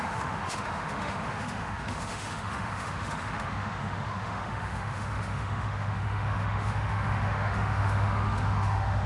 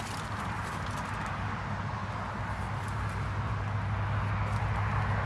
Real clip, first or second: second